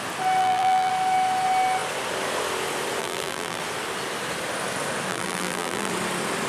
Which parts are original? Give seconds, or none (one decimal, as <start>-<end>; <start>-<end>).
0.0-0.4; 0.9-3.0; 3.6-5.1; 5.9-6.5

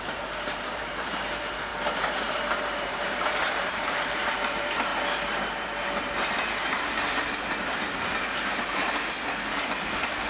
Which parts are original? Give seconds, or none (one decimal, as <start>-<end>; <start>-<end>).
1.7-2.9; 4.9-8.7

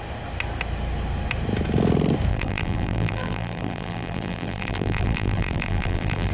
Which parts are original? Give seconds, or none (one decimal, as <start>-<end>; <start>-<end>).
0.0-2.3

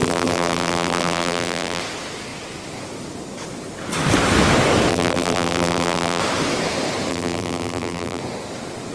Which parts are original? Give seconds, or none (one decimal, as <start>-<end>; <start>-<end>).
1.8-4.9; 6.2-7.1; 8.2-8.9

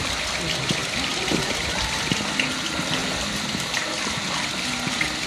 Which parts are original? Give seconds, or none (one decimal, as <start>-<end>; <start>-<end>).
0.0-0.8; 1.7-3.0